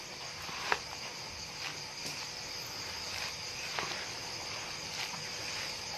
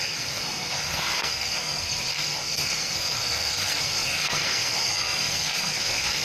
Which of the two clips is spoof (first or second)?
second